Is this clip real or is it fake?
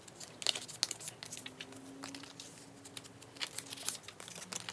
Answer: real